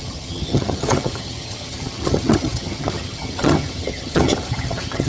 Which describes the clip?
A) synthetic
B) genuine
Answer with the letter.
A